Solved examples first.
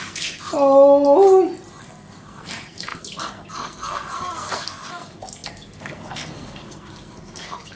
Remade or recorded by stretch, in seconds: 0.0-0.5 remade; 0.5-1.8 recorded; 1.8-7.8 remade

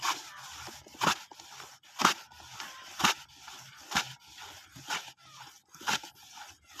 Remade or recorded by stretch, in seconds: 0.0-6.8 recorded

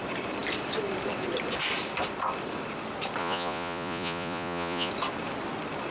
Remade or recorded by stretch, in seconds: 0.0-3.2 recorded; 3.2-4.9 remade; 4.9-5.9 recorded

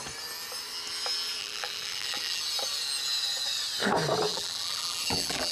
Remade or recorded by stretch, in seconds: 0.0-1.4 recorded; 1.4-2.4 remade; 2.4-4.3 recorded; 4.3-5.5 remade